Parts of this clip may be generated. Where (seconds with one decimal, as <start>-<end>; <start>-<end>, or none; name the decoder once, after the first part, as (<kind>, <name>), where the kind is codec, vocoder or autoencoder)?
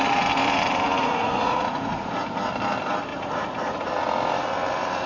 1.0-2.1 (vocoder, Vocos); 3.1-3.9